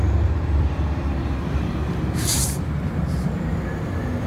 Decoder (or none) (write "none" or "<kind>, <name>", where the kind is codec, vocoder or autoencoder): vocoder, BigVGAN v2